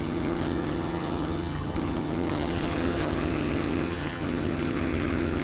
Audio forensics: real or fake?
fake